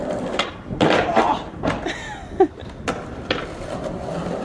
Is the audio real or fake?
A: real